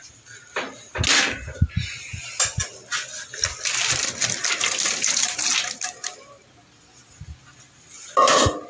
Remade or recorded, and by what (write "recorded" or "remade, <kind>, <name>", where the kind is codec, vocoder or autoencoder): recorded